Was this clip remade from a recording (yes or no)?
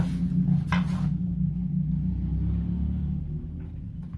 no